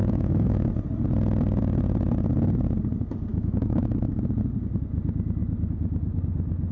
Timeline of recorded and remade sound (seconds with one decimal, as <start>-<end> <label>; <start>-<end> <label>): 0.0-0.7 remade; 0.7-3.3 recorded; 3.3-4.2 remade; 4.2-6.7 recorded